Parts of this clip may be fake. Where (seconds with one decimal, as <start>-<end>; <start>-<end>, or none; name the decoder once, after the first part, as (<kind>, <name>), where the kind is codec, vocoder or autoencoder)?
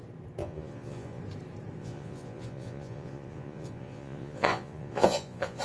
0.4-1.2 (vocoder, Vocos); 1.8-5.6